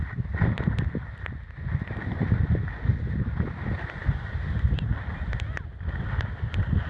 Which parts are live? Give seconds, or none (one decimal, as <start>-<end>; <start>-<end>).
0.0-6.9